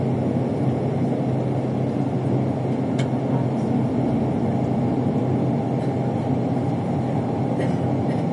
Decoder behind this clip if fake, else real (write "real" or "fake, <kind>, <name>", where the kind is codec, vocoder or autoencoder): real